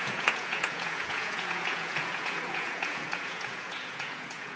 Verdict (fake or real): fake